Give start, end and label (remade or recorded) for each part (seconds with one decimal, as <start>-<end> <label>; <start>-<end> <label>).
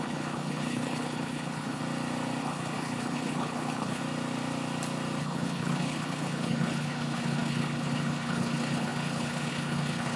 0.0-1.8 remade; 1.8-2.4 recorded; 2.4-4.0 remade; 4.0-5.2 recorded; 5.2-10.2 remade